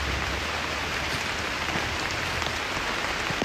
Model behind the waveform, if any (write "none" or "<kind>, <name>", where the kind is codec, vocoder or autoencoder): none